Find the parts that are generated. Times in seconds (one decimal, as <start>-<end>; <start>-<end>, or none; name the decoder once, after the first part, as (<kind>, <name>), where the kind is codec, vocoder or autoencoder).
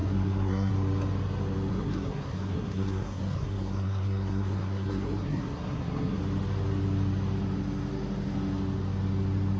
0.0-0.7 (codec, SNAC); 1.7-6.2